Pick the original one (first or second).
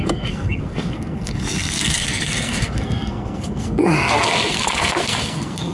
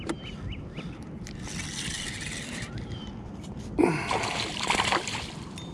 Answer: second